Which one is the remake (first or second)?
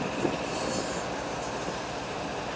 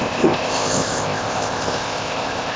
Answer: second